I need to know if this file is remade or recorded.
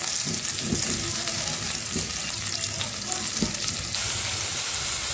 recorded